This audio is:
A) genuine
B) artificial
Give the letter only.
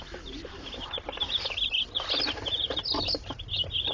A